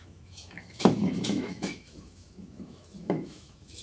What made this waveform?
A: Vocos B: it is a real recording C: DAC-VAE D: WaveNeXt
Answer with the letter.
C